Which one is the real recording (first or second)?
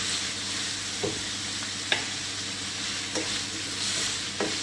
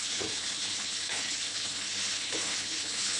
first